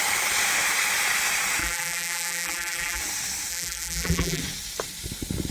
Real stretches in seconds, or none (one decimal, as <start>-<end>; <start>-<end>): 0.0-1.6; 3.0-3.5; 4.4-5.5